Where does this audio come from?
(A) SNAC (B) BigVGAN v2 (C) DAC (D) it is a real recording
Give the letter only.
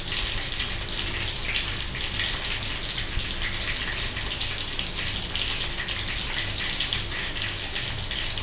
D